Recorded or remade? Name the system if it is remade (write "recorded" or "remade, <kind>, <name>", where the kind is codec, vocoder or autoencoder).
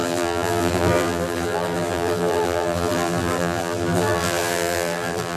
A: remade, vocoder, BigVGAN v2